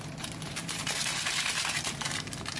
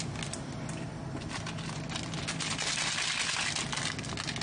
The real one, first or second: second